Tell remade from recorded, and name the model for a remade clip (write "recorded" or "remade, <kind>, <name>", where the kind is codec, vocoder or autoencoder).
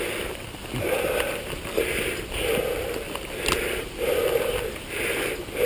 recorded